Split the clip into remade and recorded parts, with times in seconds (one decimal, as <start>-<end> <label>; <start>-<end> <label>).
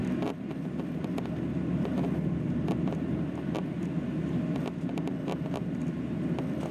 0.0-6.7 recorded